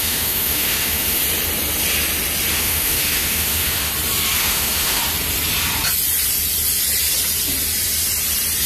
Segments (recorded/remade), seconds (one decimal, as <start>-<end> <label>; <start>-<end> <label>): 0.0-1.2 remade; 1.2-2.5 recorded; 2.5-3.9 remade; 3.9-4.4 recorded; 4.4-5.0 remade; 5.0-8.7 recorded